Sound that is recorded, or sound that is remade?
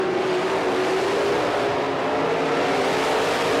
recorded